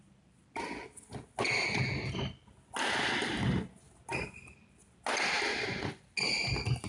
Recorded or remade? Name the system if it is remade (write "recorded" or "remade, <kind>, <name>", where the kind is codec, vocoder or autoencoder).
recorded